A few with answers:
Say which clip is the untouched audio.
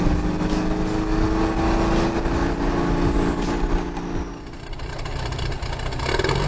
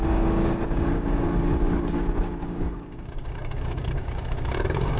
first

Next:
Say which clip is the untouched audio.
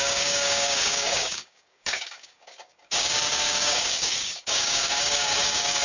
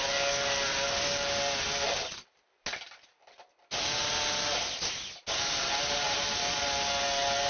second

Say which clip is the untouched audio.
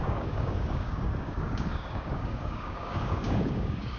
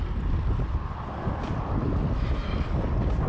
second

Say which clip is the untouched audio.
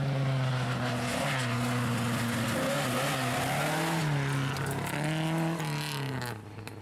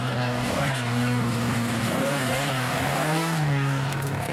first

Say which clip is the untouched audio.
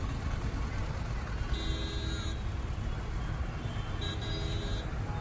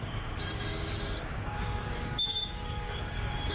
first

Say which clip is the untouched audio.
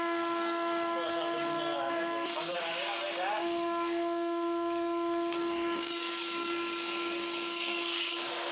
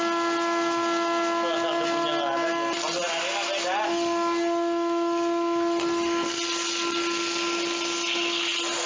second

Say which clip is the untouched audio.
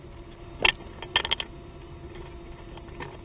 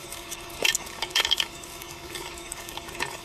first